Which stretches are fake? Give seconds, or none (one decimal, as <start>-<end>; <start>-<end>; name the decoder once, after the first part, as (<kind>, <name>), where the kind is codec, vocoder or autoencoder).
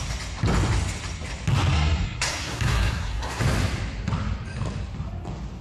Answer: 1.7-3.4 (codec, SNAC)